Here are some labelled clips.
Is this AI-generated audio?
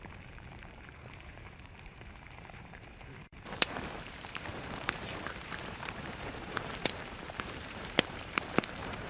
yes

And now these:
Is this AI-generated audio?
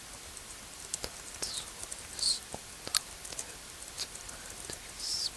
yes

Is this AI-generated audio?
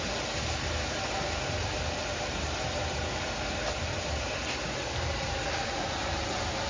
yes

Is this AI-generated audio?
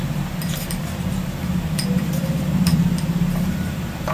yes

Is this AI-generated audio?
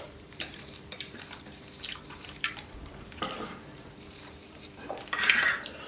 yes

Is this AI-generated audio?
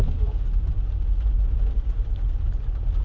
no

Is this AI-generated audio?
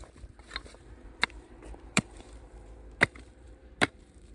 yes